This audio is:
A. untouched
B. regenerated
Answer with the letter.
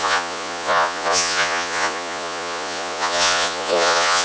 B